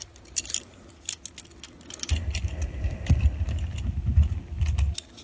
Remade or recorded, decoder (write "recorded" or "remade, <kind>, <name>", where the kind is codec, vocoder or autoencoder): recorded